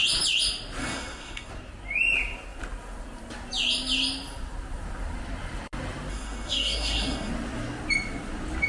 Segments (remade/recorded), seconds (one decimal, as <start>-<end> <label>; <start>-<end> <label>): 0.0-0.8 recorded; 0.8-1.5 remade; 1.5-6.1 recorded; 6.1-7.3 remade; 7.3-8.7 recorded